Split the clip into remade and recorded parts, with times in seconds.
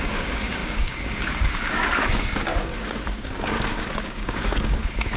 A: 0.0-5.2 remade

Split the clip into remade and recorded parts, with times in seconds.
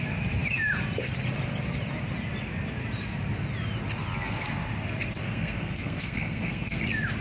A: 0.0-5.2 recorded; 5.2-6.8 remade; 6.8-7.2 recorded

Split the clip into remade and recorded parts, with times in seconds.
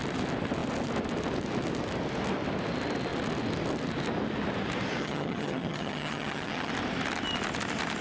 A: 0.0-5.0 recorded; 5.0-6.7 remade; 6.7-8.0 recorded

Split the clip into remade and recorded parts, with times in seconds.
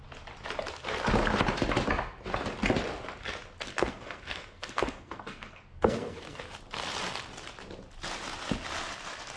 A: 0.0-3.7 recorded; 3.7-6.4 remade; 6.4-9.4 recorded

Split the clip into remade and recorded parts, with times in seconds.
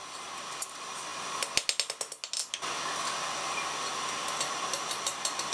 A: 0.0-1.1 remade; 1.1-4.4 recorded; 4.4-5.5 remade